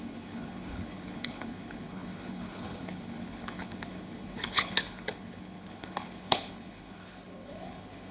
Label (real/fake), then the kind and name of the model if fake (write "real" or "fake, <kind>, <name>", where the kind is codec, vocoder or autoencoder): fake, codec, HILCodec